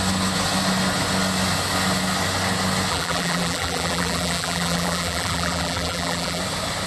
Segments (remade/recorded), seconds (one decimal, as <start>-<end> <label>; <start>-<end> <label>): 0.0-2.9 recorded; 2.9-6.4 remade; 6.4-6.9 recorded